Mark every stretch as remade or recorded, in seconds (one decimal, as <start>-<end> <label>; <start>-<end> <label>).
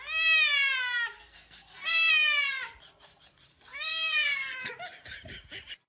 0.0-1.2 recorded; 1.2-2.1 remade; 2.1-3.5 recorded; 3.5-4.7 remade; 4.7-5.9 recorded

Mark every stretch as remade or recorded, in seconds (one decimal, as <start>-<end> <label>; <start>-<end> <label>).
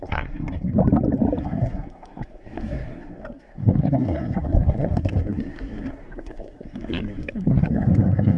0.0-0.8 remade; 0.8-1.4 recorded; 1.4-8.4 remade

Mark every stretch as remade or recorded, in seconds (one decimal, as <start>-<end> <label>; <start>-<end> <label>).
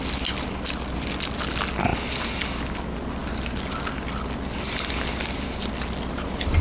0.0-6.6 recorded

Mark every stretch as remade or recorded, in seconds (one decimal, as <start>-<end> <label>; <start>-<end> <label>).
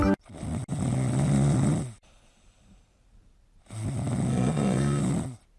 0.0-4.3 recorded; 4.3-5.0 remade; 5.0-5.6 recorded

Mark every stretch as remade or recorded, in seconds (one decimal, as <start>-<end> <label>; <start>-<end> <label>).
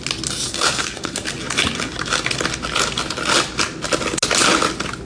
0.0-0.5 recorded; 0.5-1.3 remade; 1.3-5.1 recorded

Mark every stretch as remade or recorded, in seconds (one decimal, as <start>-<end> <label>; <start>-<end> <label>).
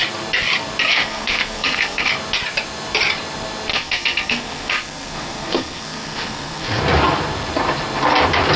0.0-0.9 recorded; 0.9-2.1 remade; 2.1-3.7 recorded; 3.7-6.8 remade; 6.8-8.6 recorded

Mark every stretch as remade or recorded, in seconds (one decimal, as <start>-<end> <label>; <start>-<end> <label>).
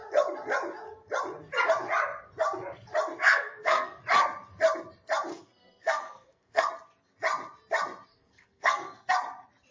0.0-3.2 recorded; 3.2-4.0 remade; 4.0-5.3 recorded; 5.3-6.7 remade; 6.7-8.1 recorded; 8.1-9.1 remade; 9.1-9.7 recorded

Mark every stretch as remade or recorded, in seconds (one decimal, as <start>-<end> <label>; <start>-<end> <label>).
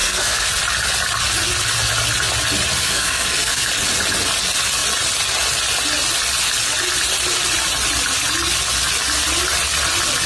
0.0-0.5 remade; 0.5-2.8 recorded; 2.8-3.7 remade; 3.7-10.3 recorded